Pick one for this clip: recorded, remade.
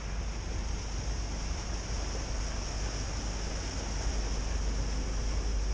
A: recorded